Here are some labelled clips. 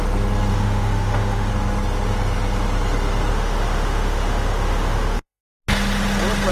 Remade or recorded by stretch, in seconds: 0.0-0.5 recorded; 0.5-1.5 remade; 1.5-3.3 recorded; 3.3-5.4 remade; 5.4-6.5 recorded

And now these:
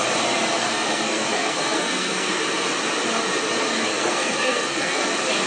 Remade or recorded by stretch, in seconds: 0.0-0.6 recorded; 0.6-2.4 remade; 2.4-3.9 recorded; 3.9-5.1 remade; 5.1-5.5 recorded